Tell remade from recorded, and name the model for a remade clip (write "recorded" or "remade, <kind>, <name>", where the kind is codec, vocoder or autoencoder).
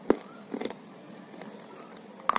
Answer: recorded